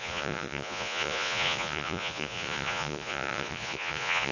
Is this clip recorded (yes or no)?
no